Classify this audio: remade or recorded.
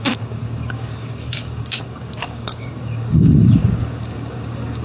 remade